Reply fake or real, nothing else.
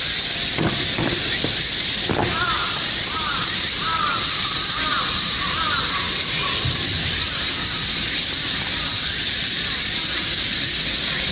fake